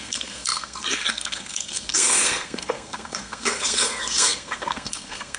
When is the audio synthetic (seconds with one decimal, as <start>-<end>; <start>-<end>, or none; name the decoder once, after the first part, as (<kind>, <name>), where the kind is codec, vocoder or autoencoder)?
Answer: 0.0-5.4 (codec, SNAC)